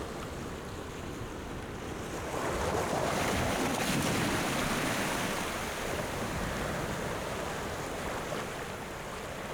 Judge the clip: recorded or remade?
recorded